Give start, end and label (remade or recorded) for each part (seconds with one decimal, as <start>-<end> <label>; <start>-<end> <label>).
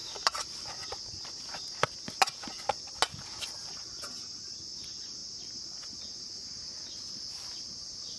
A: 0.0-8.2 recorded